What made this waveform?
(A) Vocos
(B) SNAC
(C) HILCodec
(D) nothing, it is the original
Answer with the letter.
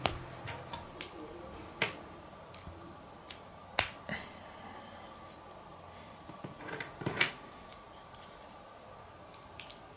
D